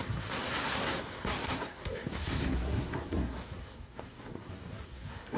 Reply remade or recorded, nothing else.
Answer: remade